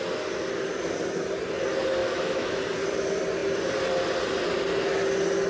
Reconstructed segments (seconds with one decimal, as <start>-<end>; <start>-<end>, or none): 2.0-2.6